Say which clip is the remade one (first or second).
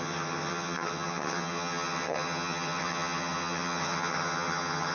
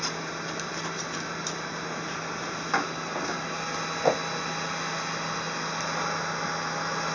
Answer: first